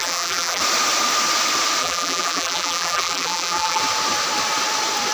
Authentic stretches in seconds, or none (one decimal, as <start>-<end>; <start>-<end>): 0.6-1.8; 3.8-5.1